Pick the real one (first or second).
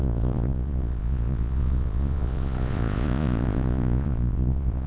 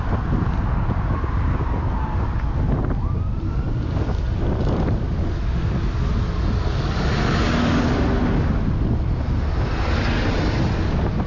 second